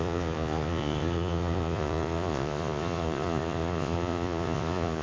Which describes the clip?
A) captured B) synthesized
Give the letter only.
B